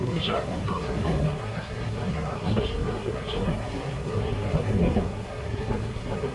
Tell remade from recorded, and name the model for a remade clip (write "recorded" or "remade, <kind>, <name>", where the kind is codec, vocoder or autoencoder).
remade, codec, SNAC